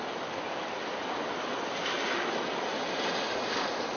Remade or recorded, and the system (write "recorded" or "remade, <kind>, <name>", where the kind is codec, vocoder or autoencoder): recorded